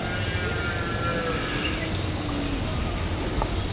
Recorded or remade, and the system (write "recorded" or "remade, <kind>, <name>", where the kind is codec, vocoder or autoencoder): recorded